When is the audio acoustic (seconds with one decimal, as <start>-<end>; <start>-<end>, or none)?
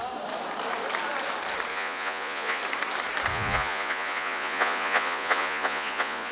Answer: 0.0-1.7; 2.6-3.3